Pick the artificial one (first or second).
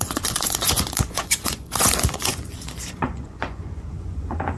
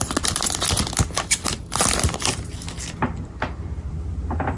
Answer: first